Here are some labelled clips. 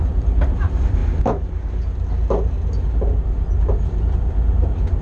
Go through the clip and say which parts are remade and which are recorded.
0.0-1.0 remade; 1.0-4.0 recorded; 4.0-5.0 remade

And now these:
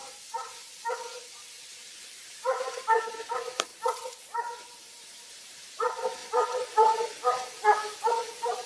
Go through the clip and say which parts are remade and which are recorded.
0.0-2.0 recorded; 2.0-3.7 remade; 3.7-4.6 recorded; 4.6-6.2 remade; 6.2-8.1 recorded; 8.1-8.7 remade

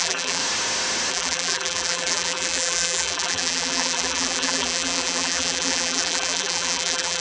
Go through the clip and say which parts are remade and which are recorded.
0.0-0.4 remade; 0.4-1.1 recorded; 1.1-7.2 remade

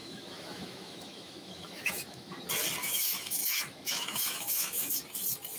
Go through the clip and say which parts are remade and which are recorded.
0.0-2.4 remade; 2.4-2.8 recorded; 2.8-5.0 remade; 5.0-5.6 recorded

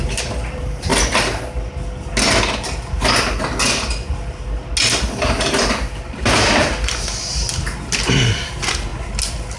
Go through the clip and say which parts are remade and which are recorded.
0.0-0.9 remade; 0.9-5.0 recorded; 5.0-8.9 remade; 8.9-9.6 recorded

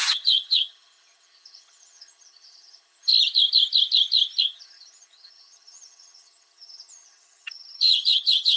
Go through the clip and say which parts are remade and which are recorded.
0.0-3.1 remade; 3.1-4.4 recorded; 4.4-8.6 remade

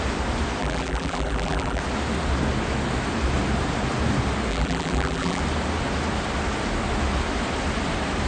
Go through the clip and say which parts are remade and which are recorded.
0.0-0.6 recorded; 0.6-1.8 remade; 1.8-4.5 recorded; 4.5-5.4 remade; 5.4-8.3 recorded

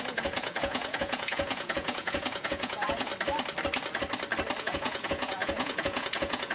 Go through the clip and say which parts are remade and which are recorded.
0.0-3.1 remade; 3.1-4.6 recorded; 4.6-6.5 remade